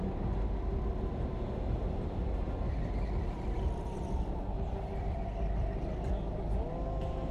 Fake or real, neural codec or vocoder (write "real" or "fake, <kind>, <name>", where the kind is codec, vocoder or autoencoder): real